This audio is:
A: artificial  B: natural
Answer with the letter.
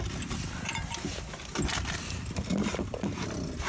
B